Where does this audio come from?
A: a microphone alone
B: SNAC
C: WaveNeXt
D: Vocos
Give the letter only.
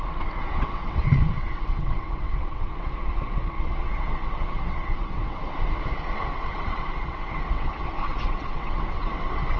C